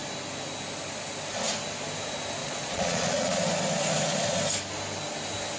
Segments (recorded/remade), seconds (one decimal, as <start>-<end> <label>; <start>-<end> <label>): 0.0-2.4 recorded; 2.4-3.4 remade; 3.4-5.6 recorded